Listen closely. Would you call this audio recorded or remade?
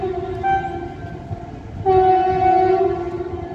recorded